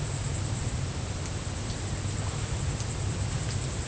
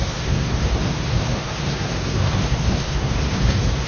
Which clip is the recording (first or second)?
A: first